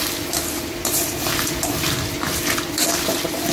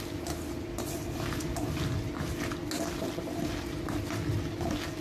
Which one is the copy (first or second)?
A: first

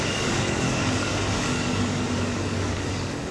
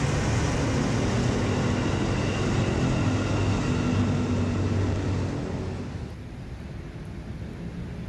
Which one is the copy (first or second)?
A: first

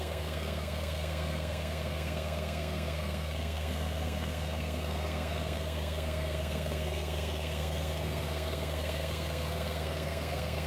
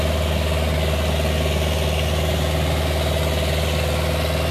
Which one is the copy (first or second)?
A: first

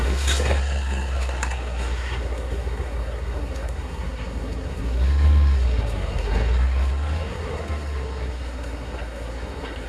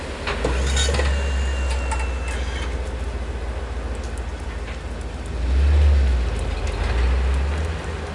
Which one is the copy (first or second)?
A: first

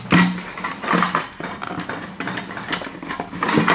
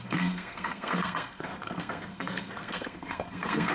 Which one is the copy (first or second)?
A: second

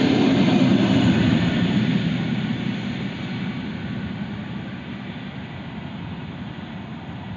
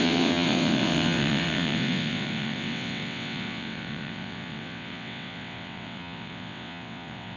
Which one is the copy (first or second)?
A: second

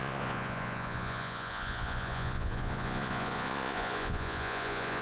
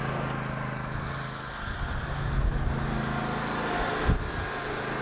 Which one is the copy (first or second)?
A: first